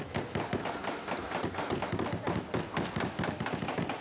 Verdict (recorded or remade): recorded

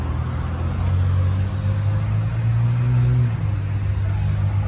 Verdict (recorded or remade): recorded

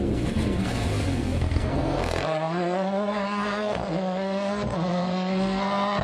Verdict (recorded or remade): remade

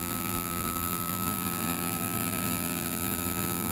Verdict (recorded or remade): remade